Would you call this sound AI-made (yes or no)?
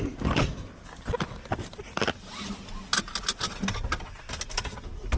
no